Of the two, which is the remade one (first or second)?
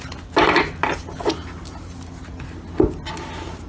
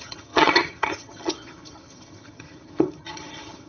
second